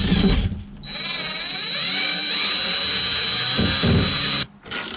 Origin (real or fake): real